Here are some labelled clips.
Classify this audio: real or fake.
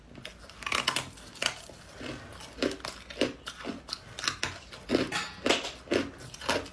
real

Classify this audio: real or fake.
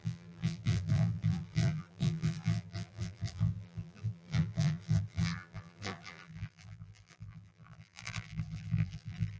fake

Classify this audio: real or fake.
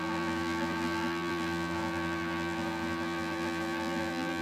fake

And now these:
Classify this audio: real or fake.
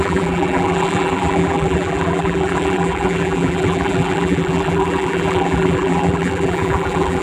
fake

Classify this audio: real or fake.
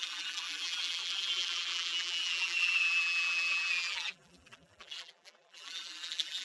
fake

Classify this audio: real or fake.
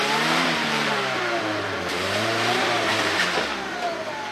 fake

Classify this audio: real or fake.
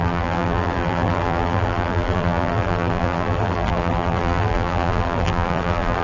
fake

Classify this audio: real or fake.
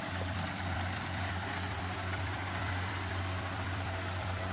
fake